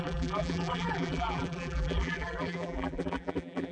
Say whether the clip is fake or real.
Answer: fake